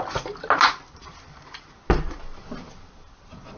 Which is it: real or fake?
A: real